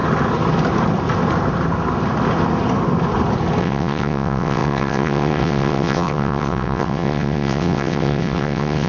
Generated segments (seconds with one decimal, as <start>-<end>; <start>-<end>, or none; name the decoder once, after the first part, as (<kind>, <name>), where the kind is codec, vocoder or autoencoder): 3.6-8.9 (vocoder, WaveNeXt)